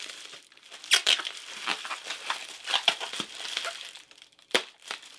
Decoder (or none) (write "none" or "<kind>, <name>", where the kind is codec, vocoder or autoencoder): vocoder, BigVGAN v2